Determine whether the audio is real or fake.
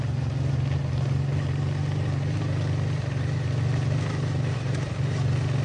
real